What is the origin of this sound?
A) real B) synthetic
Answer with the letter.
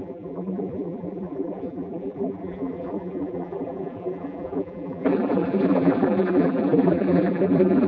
B